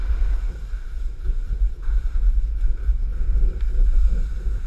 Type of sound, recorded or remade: recorded